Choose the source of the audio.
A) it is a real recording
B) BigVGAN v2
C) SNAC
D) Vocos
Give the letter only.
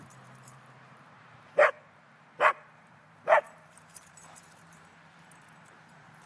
B